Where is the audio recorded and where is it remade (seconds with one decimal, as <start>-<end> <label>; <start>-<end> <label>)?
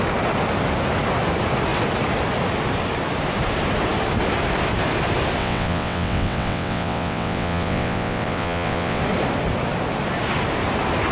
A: 0.0-5.4 recorded; 5.4-9.0 remade; 9.0-11.1 recorded